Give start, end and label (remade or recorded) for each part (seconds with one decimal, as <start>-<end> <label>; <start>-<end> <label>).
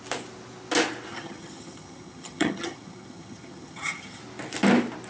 0.0-1.1 recorded; 1.1-4.2 remade; 4.2-5.1 recorded